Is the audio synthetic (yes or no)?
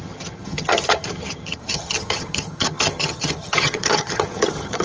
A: yes